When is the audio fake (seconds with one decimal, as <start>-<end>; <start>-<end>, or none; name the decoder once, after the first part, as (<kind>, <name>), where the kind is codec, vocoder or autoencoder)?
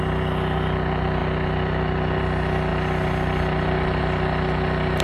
none